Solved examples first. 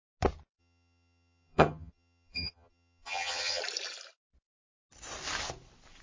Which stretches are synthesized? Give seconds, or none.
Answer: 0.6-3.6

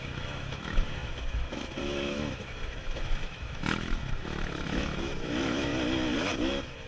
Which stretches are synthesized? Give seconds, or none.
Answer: 0.0-5.7; 6.5-6.9

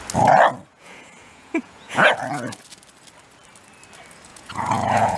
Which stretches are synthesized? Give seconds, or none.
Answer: 0.7-2.1; 4.3-5.2